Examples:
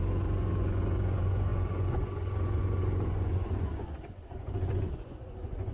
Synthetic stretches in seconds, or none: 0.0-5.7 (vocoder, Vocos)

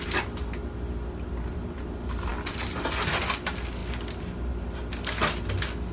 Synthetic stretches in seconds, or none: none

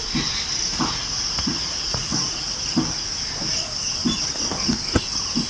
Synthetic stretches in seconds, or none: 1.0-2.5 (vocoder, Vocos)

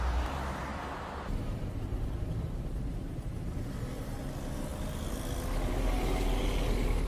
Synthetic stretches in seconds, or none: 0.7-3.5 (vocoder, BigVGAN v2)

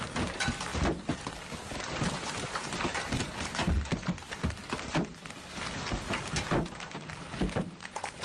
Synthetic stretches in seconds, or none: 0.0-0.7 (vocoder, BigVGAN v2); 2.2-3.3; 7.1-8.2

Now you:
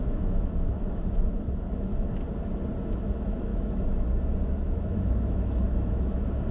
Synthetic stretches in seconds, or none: 0.0-1.9 (autoencoder, DAC-VAE); 2.8-3.5; 4.4-6.5

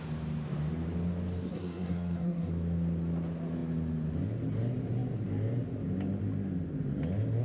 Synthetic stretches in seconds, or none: 1.5-2.5 (codec, SNAC)